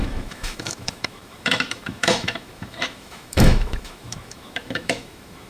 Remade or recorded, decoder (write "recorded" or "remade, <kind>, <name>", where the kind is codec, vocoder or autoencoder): remade, autoencoder, DAC-VAE